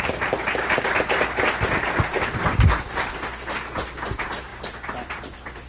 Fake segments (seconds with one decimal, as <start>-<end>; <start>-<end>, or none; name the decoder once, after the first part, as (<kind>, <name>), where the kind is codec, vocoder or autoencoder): 4.5-5.7 (vocoder, BigVGAN v2)